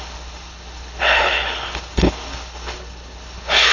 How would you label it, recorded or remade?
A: remade